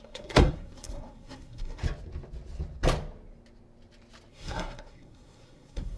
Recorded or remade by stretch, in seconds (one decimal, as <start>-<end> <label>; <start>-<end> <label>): 0.0-1.8 remade; 1.8-4.3 recorded; 4.3-6.0 remade